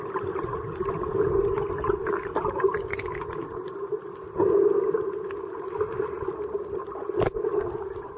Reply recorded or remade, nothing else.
recorded